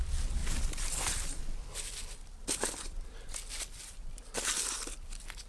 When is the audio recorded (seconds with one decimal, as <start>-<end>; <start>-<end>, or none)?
0.0-0.4; 1.4-2.4; 4.2-5.5